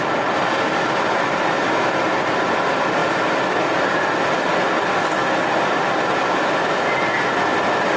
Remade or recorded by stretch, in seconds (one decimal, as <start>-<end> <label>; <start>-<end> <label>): 0.0-8.0 recorded

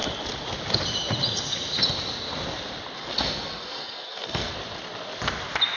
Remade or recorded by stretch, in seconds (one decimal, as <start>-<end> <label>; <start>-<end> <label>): 0.0-3.0 recorded; 3.0-4.5 remade; 4.5-5.8 recorded

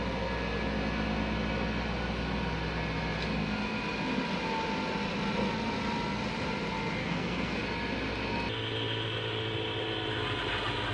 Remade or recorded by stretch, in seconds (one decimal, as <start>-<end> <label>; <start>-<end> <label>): 0.0-7.0 recorded; 7.0-7.6 remade; 7.6-10.9 recorded